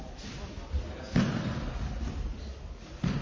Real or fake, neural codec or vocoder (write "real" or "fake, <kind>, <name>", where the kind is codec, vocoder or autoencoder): real